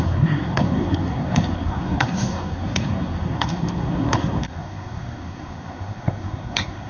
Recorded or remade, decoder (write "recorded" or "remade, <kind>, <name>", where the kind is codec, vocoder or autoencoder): remade, codec, SNAC